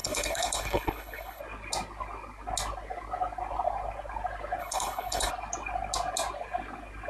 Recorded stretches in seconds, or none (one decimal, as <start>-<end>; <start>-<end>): 1.4-4.6; 5.3-7.1